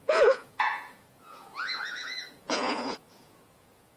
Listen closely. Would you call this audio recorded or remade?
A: remade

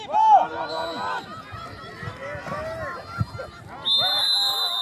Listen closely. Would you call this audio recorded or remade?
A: recorded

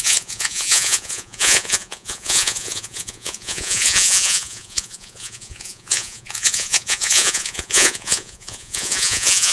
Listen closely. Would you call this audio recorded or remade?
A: remade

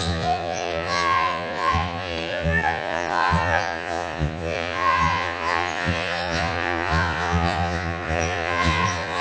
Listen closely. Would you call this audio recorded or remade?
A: remade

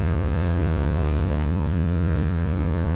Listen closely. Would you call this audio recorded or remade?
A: remade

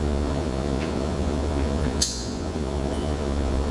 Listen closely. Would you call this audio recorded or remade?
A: remade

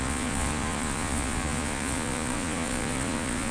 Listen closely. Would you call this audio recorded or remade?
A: remade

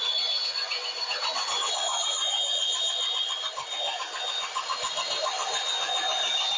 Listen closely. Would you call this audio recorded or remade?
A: recorded